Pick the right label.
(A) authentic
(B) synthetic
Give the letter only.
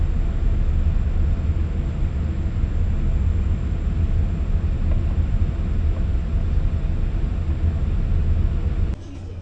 A